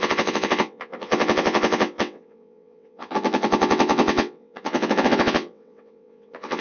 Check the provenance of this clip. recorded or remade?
remade